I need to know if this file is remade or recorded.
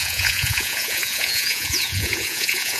remade